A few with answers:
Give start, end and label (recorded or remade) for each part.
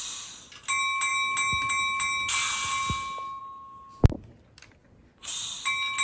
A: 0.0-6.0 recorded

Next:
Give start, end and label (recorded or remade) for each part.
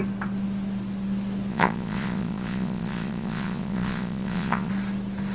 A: 0.0-1.5 recorded; 1.5-4.7 remade; 4.7-5.3 recorded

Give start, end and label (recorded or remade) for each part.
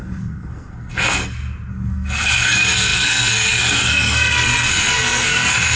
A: 0.0-1.2 remade; 1.2-1.7 recorded; 1.7-5.8 remade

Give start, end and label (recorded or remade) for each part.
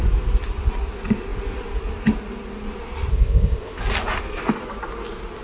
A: 0.0-3.1 recorded; 3.1-3.8 remade; 3.8-5.4 recorded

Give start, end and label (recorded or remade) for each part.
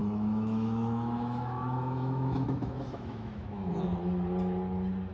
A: 0.0-3.7 remade; 3.7-5.1 recorded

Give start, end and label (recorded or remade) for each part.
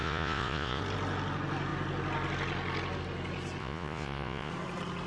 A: 0.0-0.8 remade; 0.8-3.6 recorded; 3.6-4.5 remade; 4.5-5.1 recorded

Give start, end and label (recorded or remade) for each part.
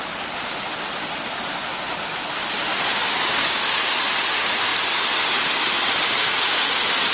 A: 0.0-2.7 recorded; 2.7-4.0 remade; 4.0-7.1 recorded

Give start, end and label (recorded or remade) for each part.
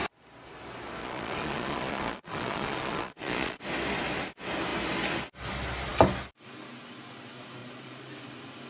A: 0.0-1.0 recorded; 1.0-3.6 remade; 3.6-7.6 recorded; 7.6-8.1 remade; 8.1-8.7 recorded